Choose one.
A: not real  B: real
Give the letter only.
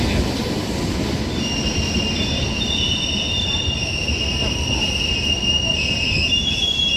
B